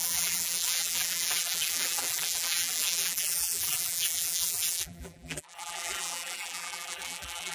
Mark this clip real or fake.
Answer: fake